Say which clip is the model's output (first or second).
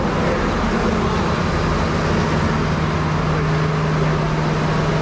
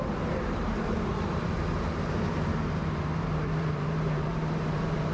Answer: second